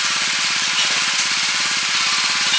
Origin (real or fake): fake